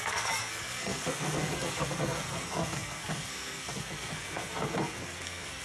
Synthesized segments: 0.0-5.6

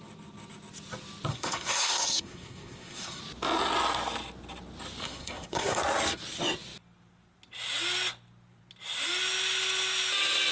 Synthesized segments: 1.3-3.2; 5.0-5.8

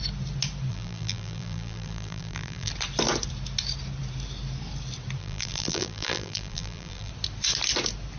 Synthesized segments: 0.7-2.7; 5.2-7.1

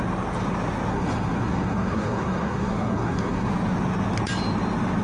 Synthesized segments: 0.9-3.5

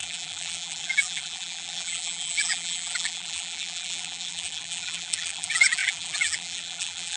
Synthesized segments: 0.0-7.2

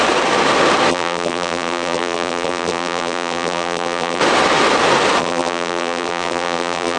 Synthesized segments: 0.9-4.2; 5.2-7.0